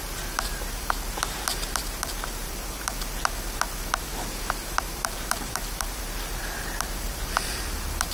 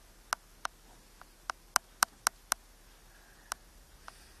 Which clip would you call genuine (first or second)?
second